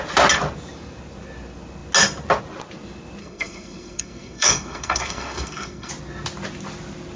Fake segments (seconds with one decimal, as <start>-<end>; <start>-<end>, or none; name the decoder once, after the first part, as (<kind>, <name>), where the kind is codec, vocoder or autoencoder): 3.2-5.9 (codec, SNAC)